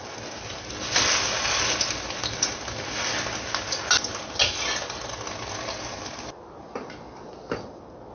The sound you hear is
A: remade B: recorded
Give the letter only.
B